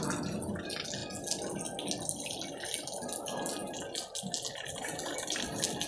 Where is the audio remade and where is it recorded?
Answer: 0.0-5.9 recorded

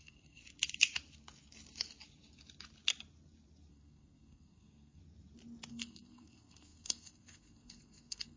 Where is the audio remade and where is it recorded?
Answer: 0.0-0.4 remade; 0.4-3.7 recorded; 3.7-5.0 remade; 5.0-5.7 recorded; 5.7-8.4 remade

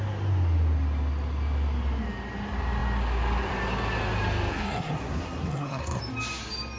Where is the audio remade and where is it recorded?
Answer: 0.0-4.5 recorded; 4.5-6.0 remade; 6.0-6.8 recorded

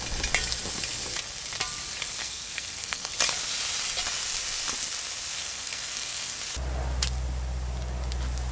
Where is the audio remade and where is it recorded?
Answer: 0.0-2.2 recorded; 2.2-3.1 remade; 3.1-5.4 recorded; 5.4-6.4 remade; 6.4-8.5 recorded

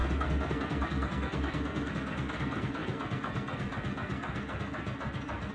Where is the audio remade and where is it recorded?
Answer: 0.0-5.5 remade

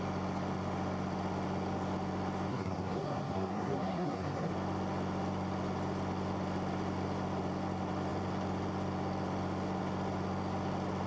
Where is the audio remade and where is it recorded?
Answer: 0.0-2.5 recorded; 2.5-4.5 remade; 4.5-11.1 recorded

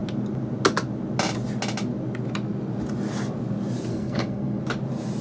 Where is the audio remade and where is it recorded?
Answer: 0.0-3.9 recorded; 3.9-4.6 remade; 4.6-5.2 recorded

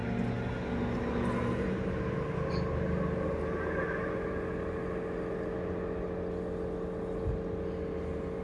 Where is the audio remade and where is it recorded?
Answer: 0.0-8.4 recorded